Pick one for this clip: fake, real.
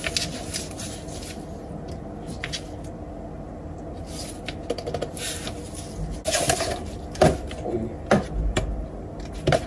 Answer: real